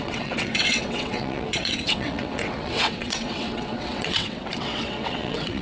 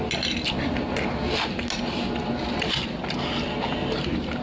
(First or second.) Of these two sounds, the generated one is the first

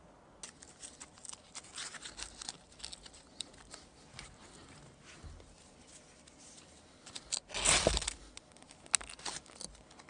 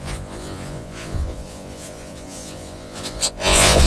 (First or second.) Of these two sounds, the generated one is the second